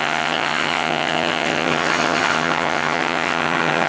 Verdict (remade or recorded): remade